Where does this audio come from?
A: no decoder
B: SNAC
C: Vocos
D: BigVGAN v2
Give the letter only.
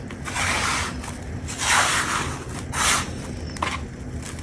A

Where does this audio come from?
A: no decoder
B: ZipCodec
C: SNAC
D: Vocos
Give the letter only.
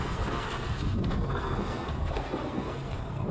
C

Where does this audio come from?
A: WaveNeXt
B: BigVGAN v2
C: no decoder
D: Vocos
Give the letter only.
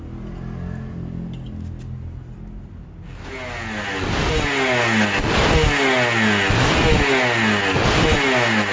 C